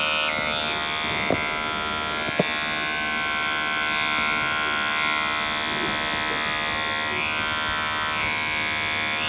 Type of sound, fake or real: real